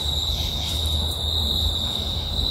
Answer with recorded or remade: recorded